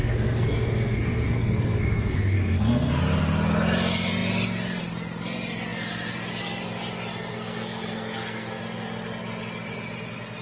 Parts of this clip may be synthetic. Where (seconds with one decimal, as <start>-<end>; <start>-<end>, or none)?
0.0-3.0; 7.3-8.6